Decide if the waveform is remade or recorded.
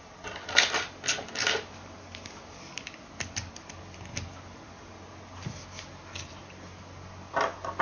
recorded